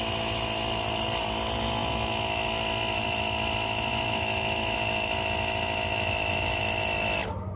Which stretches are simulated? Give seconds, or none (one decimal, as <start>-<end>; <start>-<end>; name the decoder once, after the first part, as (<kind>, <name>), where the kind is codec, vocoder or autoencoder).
none